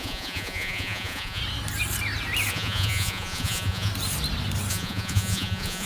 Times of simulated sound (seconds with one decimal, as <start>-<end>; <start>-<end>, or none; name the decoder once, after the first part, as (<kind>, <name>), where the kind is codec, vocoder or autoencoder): 0.0-1.4 (vocoder, Vocos); 2.5-3.9; 4.7-5.9